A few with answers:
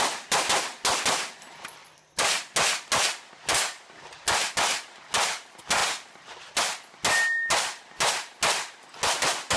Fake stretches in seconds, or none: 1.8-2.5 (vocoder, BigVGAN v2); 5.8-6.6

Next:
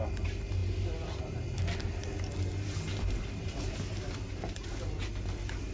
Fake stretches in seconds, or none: none

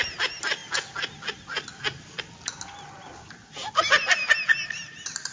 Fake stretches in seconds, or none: none

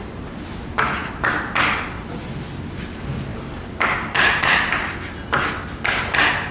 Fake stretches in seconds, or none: 3.3-4.5 (vocoder, BigVGAN v2)

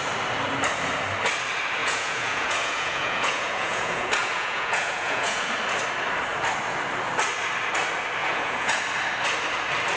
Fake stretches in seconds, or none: 1.8-5.5 (vocoder, Vocos); 8.2-8.8